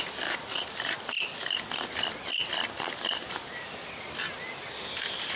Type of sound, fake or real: fake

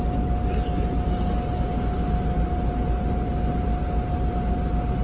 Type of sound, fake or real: real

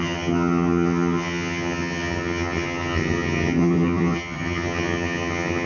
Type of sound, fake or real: fake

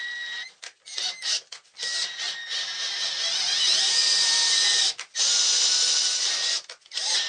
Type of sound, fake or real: real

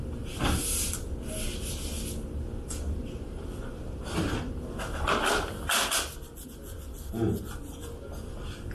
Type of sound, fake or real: real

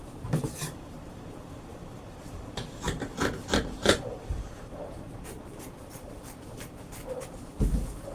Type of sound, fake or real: fake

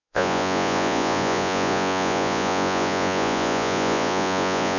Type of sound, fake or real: fake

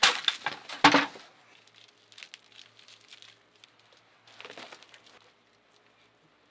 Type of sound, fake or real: real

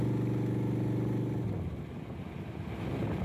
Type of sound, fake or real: real